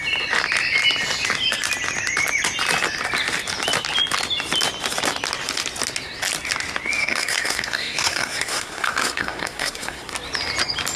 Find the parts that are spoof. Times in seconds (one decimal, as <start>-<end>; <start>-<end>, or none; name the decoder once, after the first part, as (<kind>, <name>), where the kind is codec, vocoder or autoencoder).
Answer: 7.0-10.1 (codec, SNAC)